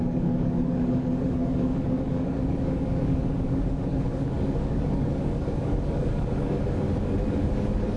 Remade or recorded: remade